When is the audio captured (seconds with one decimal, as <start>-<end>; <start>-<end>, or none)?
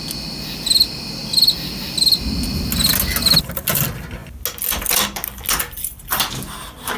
0.0-7.0